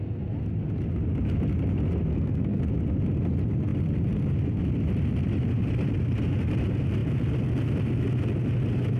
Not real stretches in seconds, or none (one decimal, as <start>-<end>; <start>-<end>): 2.1-2.6